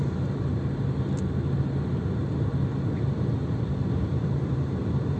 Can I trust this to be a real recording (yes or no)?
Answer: no